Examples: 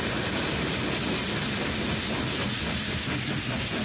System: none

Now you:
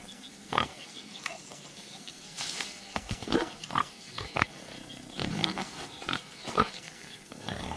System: codec, SNAC